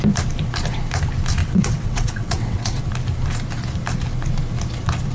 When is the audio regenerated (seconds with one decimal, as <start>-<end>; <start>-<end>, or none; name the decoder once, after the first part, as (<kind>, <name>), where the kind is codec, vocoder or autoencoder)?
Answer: 1.4-2.8 (vocoder, WaveNeXt)